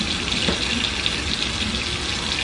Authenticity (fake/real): real